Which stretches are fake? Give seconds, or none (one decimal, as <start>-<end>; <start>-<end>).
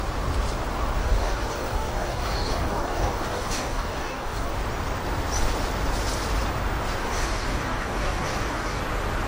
1.0-4.5; 7.0-8.8